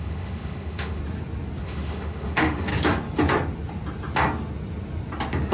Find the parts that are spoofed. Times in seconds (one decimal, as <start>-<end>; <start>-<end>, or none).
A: 0.0-1.0; 1.6-2.7